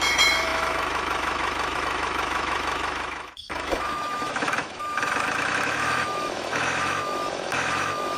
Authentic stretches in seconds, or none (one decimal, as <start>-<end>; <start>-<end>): none